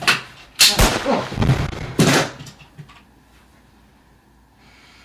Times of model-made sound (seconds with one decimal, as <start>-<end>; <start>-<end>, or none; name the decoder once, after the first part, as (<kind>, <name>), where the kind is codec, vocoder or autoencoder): 0.9-3.9 (vocoder, BigVGAN v2)